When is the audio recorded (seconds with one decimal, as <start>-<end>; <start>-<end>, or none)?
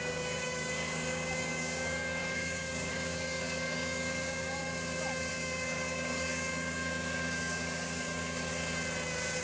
4.6-5.3; 8.5-9.4